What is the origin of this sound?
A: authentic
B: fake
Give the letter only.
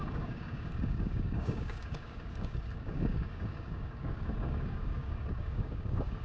B